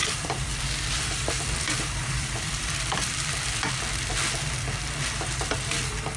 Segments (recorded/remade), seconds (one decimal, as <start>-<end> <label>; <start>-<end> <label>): 0.0-3.7 remade; 3.7-6.2 recorded

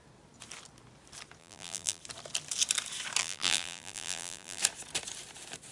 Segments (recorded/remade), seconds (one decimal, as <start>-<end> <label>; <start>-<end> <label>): 0.0-1.4 recorded; 1.4-2.0 remade; 2.0-3.2 recorded; 3.2-4.6 remade; 4.6-5.7 recorded

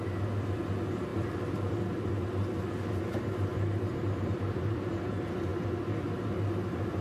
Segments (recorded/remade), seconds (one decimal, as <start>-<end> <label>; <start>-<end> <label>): 0.0-1.1 recorded; 1.1-2.1 remade; 2.1-3.5 recorded; 3.5-4.9 remade; 4.9-7.0 recorded

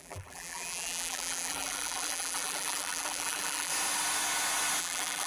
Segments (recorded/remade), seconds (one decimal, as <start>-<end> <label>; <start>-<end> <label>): 0.0-3.7 remade; 3.7-4.8 recorded; 4.8-5.3 remade